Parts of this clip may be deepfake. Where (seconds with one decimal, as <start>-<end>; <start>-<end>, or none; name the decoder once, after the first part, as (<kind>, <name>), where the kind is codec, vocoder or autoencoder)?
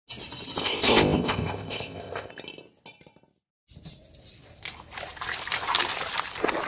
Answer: 0.6-2.3 (codec, ZipCodec)